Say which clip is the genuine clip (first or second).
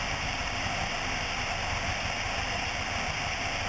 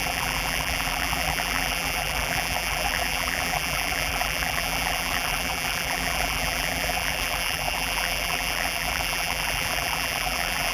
first